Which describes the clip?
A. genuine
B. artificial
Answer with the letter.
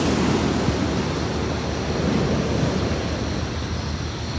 A